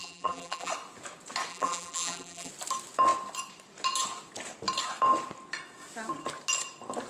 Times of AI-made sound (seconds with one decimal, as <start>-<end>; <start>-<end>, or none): 0.0-0.7; 1.5-2.5